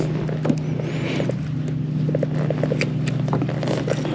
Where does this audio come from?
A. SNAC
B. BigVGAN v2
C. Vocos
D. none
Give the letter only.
D